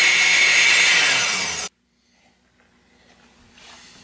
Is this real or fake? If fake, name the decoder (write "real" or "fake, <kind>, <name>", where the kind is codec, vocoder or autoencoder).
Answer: real